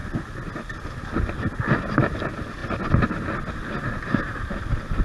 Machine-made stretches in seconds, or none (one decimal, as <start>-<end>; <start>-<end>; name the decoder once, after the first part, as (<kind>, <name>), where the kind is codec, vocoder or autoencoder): none